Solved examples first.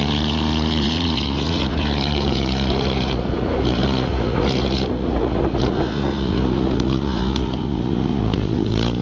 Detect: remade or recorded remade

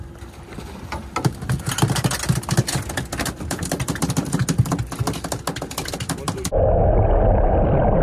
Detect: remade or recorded recorded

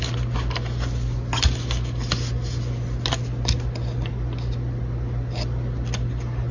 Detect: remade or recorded recorded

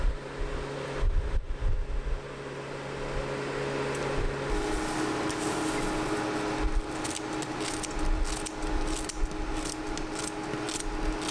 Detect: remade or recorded recorded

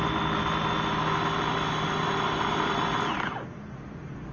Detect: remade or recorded recorded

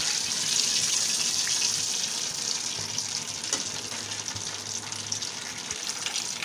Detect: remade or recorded recorded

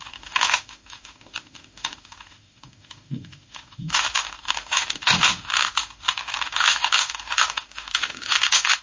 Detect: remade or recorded remade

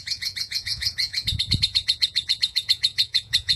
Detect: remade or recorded remade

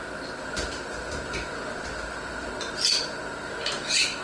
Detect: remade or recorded recorded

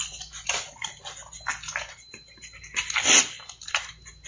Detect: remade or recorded recorded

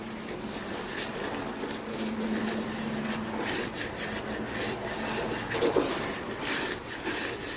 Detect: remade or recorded recorded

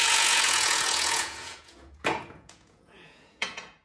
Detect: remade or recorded remade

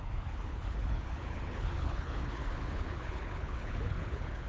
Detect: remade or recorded remade